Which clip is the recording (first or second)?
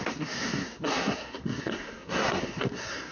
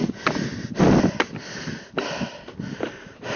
second